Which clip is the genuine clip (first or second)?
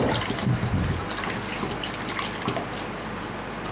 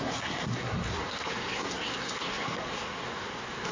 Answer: first